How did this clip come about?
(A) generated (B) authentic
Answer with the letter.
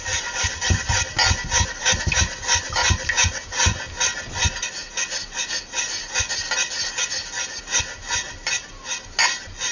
B